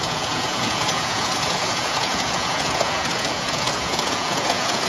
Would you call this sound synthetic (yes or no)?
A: yes